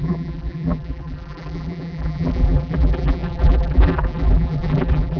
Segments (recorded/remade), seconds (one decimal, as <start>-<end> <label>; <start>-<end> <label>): 0.0-5.2 remade